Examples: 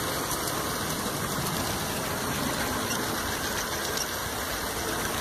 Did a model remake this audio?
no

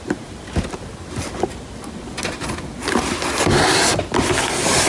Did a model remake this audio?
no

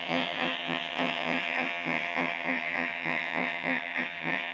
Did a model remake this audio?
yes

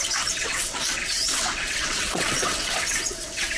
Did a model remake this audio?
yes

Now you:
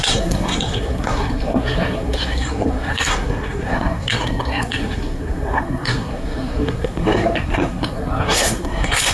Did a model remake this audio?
yes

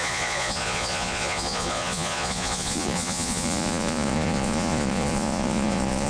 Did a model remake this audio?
yes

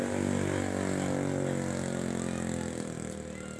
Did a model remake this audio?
no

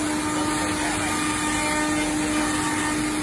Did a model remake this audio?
no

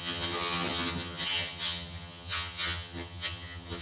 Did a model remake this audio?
yes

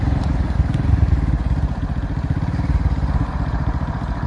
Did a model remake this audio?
yes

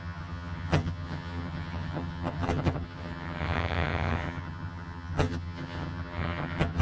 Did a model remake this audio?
yes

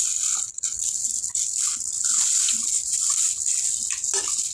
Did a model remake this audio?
no